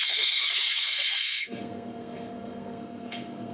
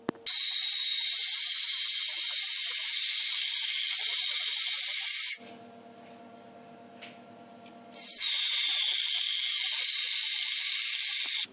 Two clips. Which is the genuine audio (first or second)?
second